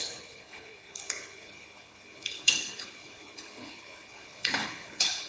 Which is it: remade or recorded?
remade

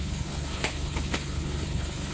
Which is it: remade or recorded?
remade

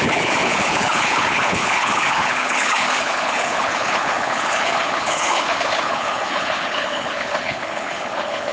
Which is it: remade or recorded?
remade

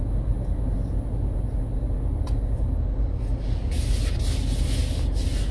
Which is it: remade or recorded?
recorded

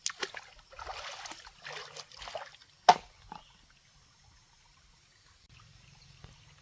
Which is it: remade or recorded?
recorded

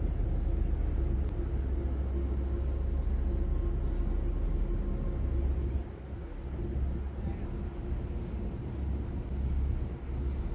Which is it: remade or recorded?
recorded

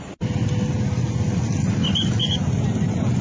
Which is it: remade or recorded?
recorded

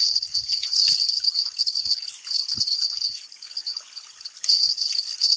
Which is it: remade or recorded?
remade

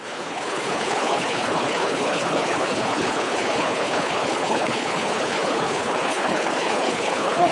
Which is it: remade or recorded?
remade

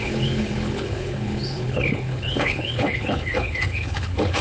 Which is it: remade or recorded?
remade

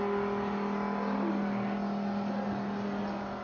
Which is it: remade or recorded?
recorded